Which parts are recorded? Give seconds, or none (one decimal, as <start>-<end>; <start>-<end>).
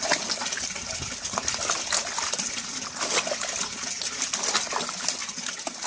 0.0-5.9